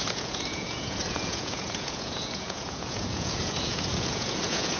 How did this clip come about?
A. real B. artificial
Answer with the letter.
B